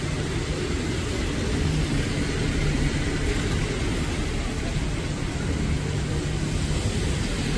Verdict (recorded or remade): recorded